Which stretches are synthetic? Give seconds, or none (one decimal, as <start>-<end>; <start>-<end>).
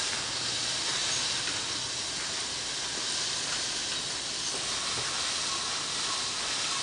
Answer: none